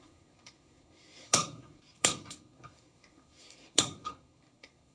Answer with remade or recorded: remade